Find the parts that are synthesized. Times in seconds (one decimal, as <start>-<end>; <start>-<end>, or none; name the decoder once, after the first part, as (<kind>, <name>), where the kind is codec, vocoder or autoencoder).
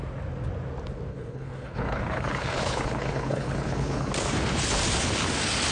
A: 1.1-4.1 (codec, HILCodec)